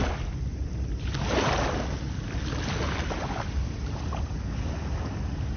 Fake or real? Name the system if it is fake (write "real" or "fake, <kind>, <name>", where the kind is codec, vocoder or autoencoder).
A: real